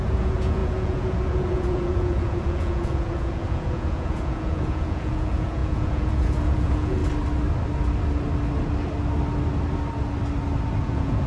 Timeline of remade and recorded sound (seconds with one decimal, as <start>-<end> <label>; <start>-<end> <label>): 0.0-7.0 remade; 7.0-10.8 recorded; 10.8-11.3 remade